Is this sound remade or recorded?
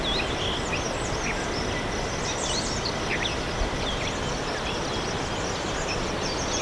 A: recorded